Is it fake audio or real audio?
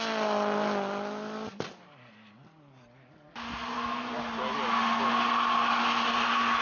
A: real